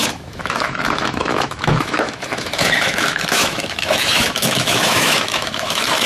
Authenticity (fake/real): fake